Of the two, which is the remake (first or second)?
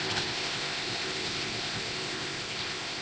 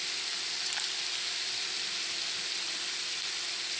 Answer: first